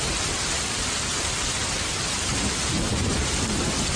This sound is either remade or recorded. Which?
recorded